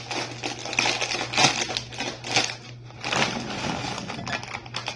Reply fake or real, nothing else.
real